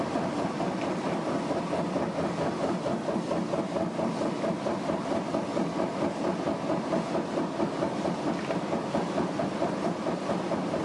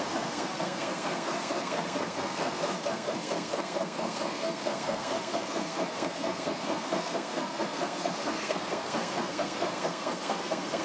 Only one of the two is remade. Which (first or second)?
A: second